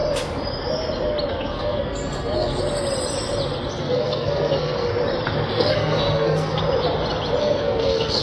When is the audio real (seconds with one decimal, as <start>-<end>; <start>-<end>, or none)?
0.0-1.3; 2.6-3.8; 4.9-5.5; 6.6-7.4